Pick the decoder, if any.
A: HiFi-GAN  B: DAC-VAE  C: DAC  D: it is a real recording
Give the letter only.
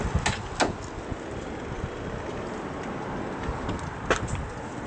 D